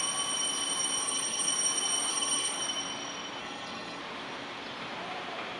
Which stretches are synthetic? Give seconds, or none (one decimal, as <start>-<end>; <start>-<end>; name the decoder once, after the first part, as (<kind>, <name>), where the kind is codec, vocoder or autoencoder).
1.0-1.5 (codec, HILCodec); 2.1-2.6; 3.4-4.0